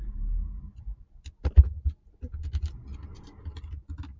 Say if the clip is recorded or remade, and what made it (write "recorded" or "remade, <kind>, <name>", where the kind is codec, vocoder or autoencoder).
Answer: recorded